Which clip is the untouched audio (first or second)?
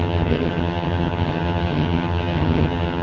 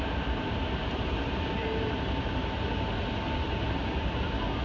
second